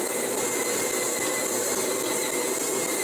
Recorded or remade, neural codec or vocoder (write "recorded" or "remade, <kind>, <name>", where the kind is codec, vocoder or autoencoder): recorded